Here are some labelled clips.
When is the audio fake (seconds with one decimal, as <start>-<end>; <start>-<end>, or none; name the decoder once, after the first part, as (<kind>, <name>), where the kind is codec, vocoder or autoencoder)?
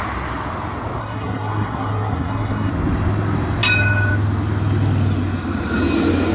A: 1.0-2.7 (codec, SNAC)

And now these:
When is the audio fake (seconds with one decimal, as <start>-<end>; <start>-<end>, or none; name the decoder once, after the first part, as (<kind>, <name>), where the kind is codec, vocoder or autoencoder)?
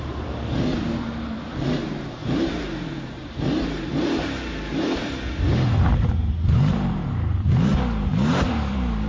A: 0.0-7.7 (vocoder, BigVGAN v2); 8.3-9.1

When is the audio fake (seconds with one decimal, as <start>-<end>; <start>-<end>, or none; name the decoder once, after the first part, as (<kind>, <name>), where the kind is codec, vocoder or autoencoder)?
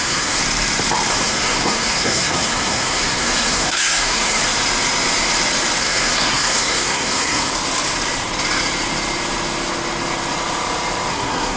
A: 0.0-0.4 (codec, SNAC); 1.1-4.4; 5.8-7.5; 11.1-11.6